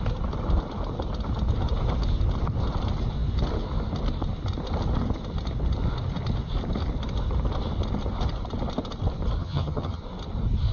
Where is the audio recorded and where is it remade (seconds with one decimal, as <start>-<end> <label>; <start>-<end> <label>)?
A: 0.0-9.4 recorded; 9.4-10.0 remade; 10.0-10.7 recorded